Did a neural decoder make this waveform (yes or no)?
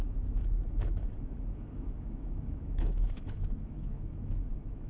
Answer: yes